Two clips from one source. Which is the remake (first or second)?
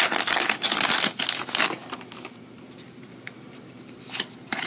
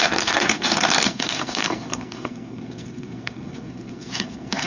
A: second